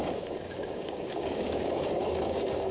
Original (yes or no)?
no